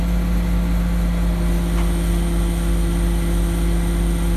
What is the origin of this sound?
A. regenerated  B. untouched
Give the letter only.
B